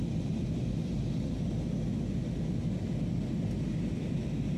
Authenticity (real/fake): real